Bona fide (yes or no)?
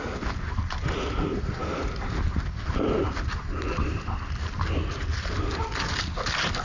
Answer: yes